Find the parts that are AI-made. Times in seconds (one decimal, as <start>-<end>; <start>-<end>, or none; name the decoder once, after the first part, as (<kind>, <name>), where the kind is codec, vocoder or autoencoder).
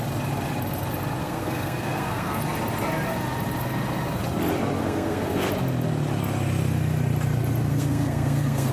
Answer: 1.2-2.4 (codec, SNAC); 4.8-5.5; 7.7-8.7